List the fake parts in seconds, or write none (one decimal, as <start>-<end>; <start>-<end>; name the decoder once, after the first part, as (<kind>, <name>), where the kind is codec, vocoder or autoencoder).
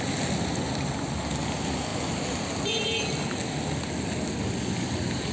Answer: none